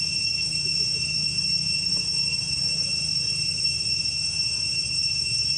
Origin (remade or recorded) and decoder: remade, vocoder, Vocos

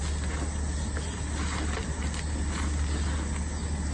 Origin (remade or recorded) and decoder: recorded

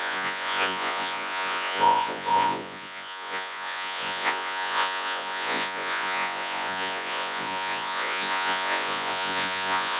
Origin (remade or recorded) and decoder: remade, vocoder, Vocos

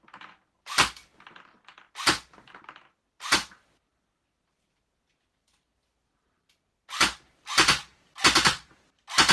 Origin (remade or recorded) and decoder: recorded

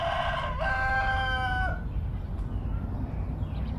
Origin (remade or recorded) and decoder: recorded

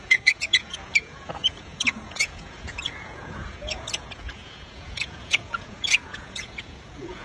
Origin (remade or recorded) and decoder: remade, vocoder, Vocos